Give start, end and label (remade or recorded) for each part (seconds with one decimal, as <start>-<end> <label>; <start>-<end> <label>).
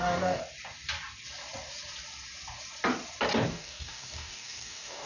0.0-0.4 remade; 0.4-3.5 recorded; 3.5-5.1 remade